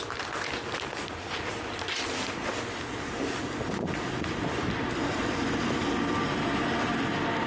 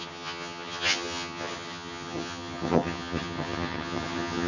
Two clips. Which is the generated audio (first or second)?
second